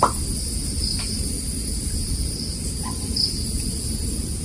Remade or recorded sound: recorded